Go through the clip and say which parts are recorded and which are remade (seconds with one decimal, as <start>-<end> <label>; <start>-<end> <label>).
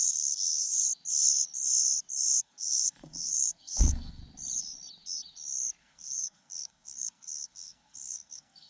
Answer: 0.0-0.8 remade; 0.8-2.4 recorded; 2.4-4.2 remade; 4.2-5.8 recorded; 5.8-8.7 remade